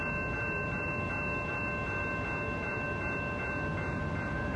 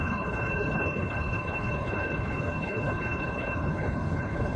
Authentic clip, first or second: first